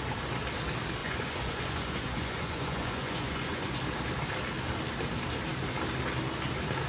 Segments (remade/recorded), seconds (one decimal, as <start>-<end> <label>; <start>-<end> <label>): 0.0-1.0 recorded; 1.0-3.8 remade; 3.8-6.9 recorded